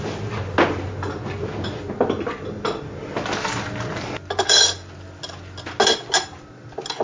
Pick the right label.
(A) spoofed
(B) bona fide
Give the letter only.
B